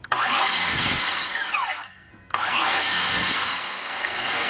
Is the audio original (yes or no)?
no